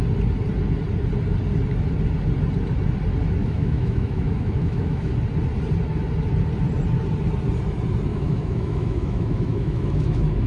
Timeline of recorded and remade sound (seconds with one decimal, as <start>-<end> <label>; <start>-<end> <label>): 0.0-3.4 recorded; 3.4-5.1 remade; 5.1-8.1 recorded; 8.1-10.5 remade